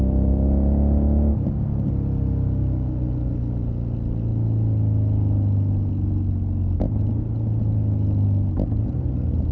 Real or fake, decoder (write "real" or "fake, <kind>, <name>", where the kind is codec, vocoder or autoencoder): real